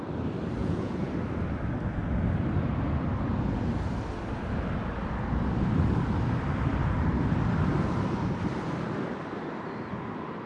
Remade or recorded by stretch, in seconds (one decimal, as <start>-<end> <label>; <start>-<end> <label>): 0.0-0.6 recorded; 0.6-1.1 remade; 1.1-10.5 recorded